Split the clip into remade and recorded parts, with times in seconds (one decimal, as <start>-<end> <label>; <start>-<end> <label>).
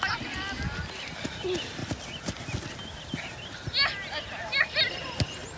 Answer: 0.0-5.6 recorded